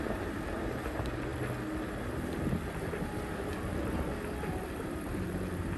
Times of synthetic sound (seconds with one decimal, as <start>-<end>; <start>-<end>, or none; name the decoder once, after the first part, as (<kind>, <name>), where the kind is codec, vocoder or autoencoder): 0.0-1.3 (vocoder, BigVGAN v2); 4.8-5.8